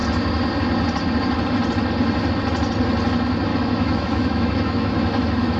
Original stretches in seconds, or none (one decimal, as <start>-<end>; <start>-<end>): 0.0-3.5